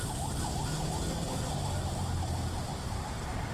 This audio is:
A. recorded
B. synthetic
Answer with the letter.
A